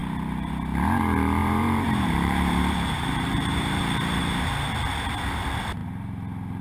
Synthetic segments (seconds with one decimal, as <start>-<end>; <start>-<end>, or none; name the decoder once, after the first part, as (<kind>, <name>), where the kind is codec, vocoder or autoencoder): 0.0-0.5 (vocoder, BigVGAN v2); 1.4-4.2